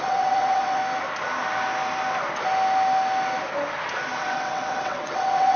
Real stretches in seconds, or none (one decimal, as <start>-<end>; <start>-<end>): 0.8-4.2